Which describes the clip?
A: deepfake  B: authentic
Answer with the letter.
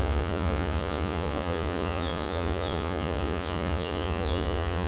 A